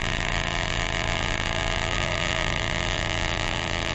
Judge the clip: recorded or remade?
remade